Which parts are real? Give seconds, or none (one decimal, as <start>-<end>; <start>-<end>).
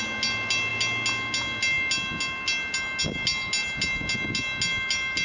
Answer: 0.0-5.2